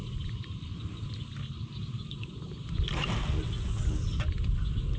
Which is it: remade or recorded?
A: recorded